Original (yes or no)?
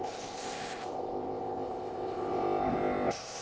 no